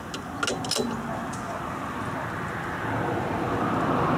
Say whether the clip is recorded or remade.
recorded